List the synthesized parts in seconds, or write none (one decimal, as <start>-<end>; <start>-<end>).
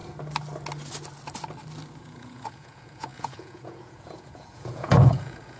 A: 2.0-5.6